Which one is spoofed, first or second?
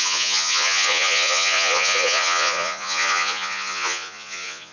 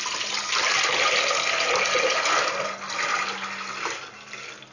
first